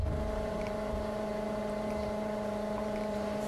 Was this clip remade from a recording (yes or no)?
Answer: yes